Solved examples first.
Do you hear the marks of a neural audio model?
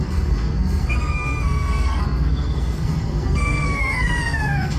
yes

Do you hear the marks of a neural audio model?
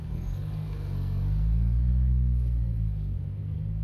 yes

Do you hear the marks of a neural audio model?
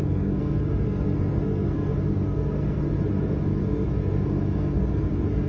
yes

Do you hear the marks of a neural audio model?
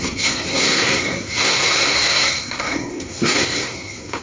yes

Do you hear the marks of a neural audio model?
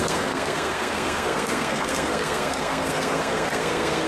yes